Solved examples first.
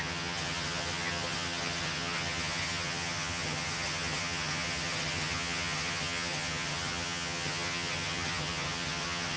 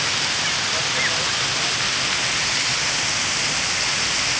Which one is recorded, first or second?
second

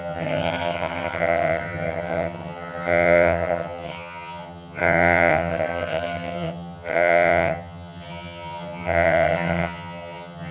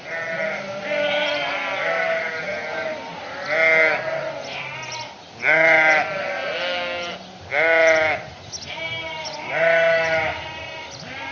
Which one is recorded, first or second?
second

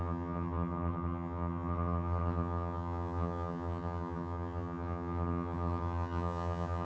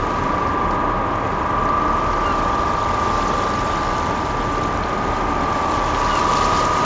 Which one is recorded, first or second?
second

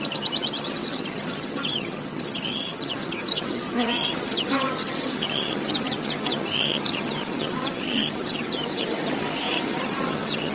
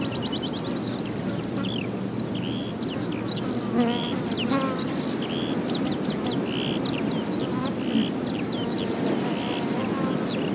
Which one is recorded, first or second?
second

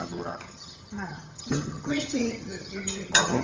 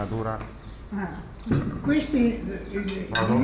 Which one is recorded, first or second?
second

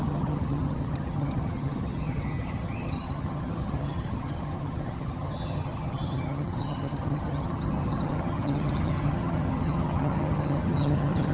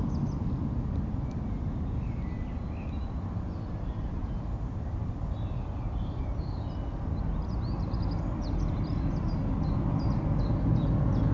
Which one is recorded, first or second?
second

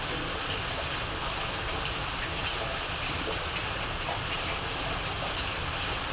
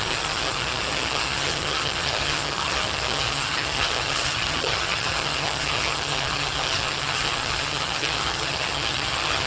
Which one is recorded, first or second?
first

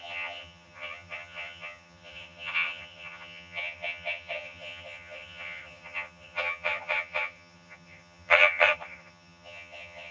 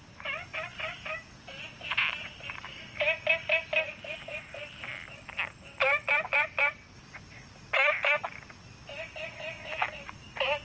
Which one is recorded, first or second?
second